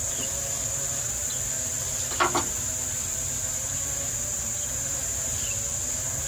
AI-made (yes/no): no